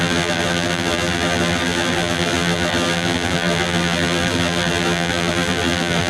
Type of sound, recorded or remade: remade